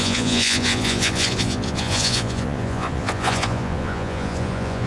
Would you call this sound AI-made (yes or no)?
yes